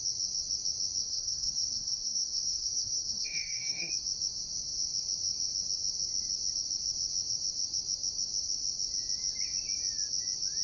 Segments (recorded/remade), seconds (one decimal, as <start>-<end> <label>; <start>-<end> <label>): 0.0-1.0 recorded; 1.0-3.9 remade; 3.9-10.6 recorded